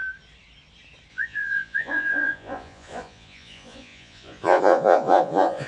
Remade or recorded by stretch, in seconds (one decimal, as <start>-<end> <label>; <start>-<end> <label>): 0.0-1.1 recorded; 1.1-5.7 remade